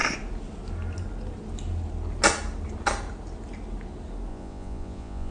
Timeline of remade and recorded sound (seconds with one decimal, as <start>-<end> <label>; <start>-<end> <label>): 0.0-4.3 recorded; 4.3-5.3 remade